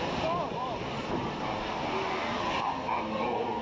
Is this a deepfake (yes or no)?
no